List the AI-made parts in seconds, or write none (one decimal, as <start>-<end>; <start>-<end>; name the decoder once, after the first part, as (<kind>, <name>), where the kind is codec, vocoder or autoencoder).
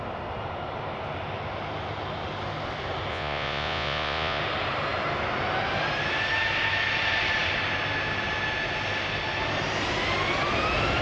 3.1-4.4 (vocoder, Vocos)